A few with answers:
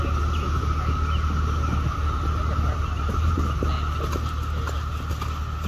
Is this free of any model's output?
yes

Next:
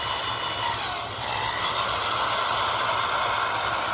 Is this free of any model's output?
yes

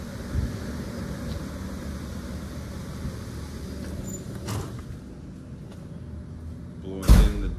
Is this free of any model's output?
yes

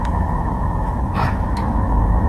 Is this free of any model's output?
no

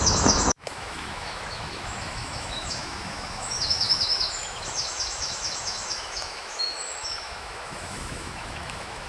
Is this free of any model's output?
no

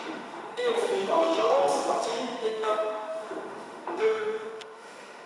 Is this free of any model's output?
no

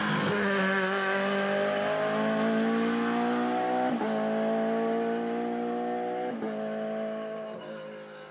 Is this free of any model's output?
yes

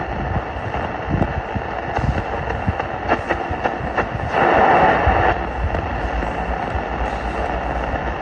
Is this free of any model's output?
yes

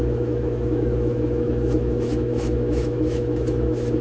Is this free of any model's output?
no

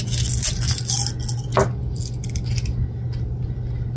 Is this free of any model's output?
yes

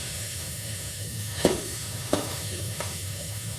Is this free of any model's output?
no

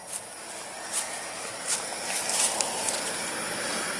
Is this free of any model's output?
yes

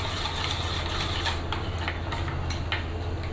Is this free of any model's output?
yes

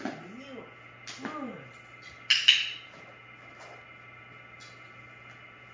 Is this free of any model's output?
yes